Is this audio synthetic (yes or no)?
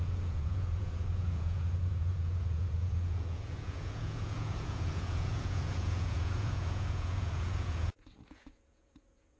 yes